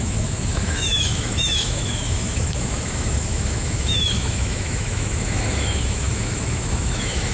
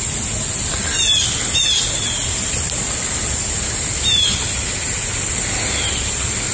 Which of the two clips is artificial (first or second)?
first